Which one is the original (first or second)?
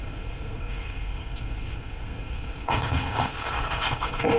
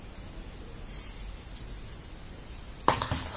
second